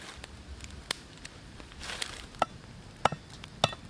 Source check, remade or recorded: recorded